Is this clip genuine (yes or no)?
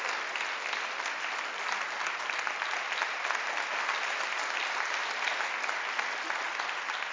yes